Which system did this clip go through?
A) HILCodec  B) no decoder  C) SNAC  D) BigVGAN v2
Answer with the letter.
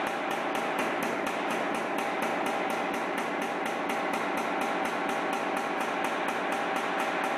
B